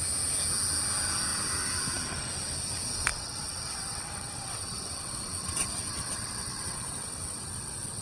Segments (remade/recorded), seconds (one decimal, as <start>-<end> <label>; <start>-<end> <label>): 0.0-3.1 recorded; 3.1-8.0 remade